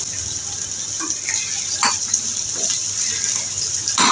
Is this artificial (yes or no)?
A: no